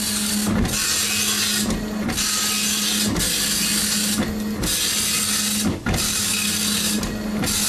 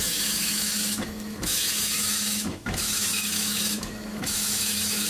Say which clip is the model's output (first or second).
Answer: second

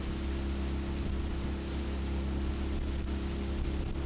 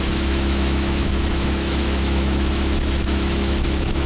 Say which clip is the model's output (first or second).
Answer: second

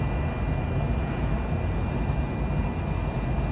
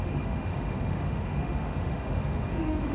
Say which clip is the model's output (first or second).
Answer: second